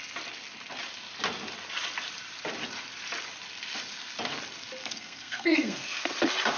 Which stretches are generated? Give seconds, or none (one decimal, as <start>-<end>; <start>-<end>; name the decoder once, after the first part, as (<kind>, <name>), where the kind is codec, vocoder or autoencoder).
4.8-6.0 (codec, SNAC)